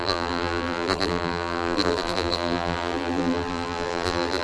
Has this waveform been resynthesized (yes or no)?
yes